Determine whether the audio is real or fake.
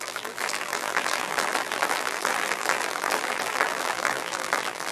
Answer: fake